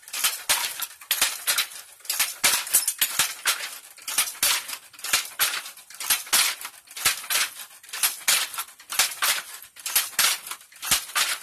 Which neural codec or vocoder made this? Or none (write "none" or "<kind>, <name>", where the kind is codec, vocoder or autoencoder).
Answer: none